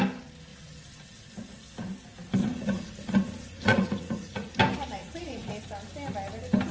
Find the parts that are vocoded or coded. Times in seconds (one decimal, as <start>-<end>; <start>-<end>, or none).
2.4-4.6; 5.0-5.5